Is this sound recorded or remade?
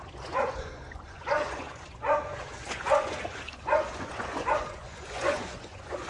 remade